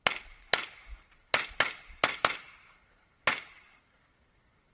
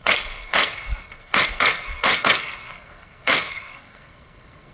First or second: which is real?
first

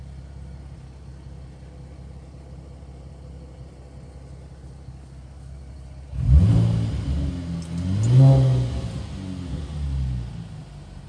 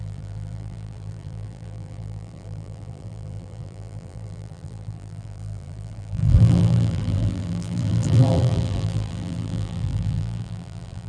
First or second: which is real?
first